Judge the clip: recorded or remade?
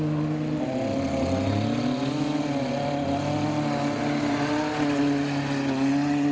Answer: recorded